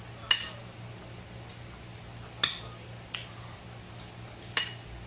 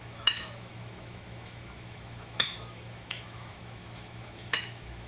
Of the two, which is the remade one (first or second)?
second